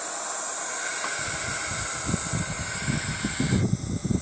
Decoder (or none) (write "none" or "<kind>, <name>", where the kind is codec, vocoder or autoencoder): none